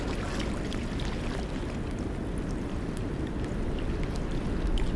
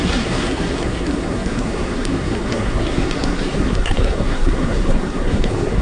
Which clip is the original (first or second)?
first